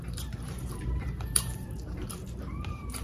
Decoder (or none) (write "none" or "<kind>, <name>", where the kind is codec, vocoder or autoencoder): vocoder, BigVGAN v2